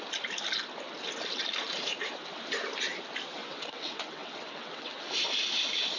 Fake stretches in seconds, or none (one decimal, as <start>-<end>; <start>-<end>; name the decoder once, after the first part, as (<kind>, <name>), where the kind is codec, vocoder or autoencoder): 3.4-5.1 (vocoder, WaveNeXt)